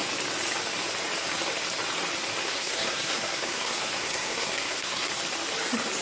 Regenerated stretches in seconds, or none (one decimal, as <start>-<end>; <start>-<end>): 2.4-5.1